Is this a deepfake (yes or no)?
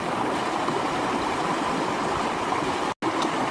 no